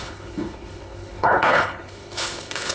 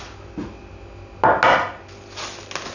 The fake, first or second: first